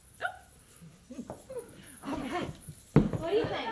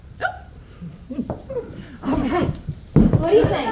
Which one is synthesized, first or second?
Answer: second